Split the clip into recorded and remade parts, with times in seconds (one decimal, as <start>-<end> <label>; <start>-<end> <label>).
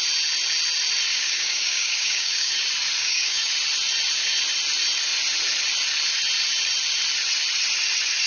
0.0-1.1 recorded; 1.1-2.5 remade; 2.5-3.0 recorded; 3.0-3.5 remade; 3.5-8.3 recorded